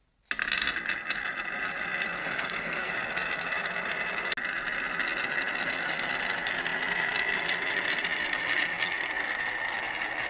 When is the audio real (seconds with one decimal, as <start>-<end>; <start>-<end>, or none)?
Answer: 0.0-2.2; 2.9-10.3